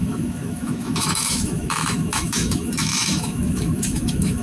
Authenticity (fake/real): fake